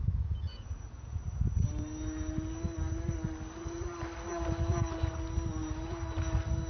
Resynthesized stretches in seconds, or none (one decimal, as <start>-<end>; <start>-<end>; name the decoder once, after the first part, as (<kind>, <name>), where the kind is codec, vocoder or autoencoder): 0.0-1.4 (vocoder, Vocos)